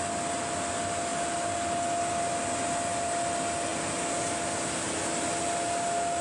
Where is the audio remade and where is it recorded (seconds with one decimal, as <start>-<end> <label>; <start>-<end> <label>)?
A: 0.0-6.2 recorded